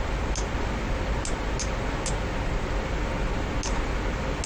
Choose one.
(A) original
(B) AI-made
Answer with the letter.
A